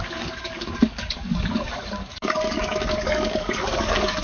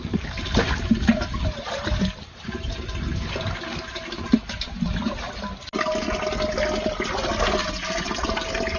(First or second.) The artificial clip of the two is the first